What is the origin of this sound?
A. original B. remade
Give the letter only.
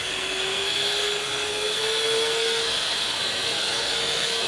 B